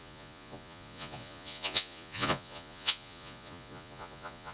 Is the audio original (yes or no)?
no